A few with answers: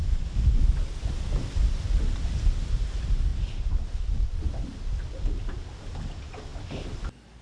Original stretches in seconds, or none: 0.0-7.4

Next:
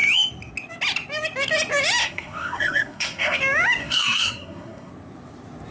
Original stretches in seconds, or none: 0.0-2.0; 3.4-3.8; 4.9-5.7

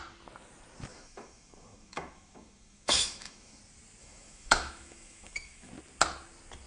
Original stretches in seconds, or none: 0.0-0.9; 3.6-4.0; 5.7-6.7

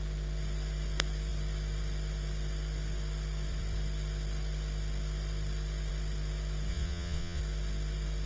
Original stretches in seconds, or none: 0.0-6.7; 7.4-8.3

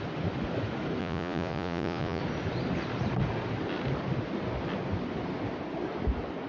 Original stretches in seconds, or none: 0.0-1.0; 2.2-6.5

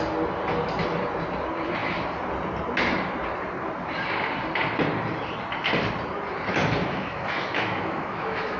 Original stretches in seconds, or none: 0.0-6.8

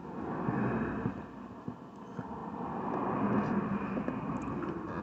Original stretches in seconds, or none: 0.0-5.0

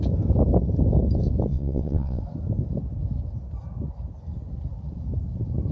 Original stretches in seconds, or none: 0.0-1.5; 2.2-5.7